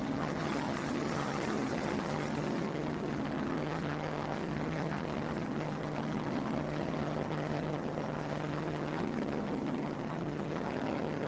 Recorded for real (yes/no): no